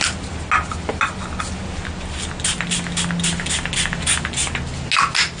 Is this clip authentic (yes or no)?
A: yes